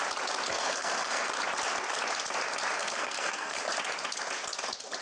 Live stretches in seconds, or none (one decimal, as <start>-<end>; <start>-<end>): 0.0-0.5; 1.3-2.8; 3.6-5.0